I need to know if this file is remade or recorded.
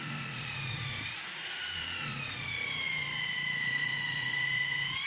remade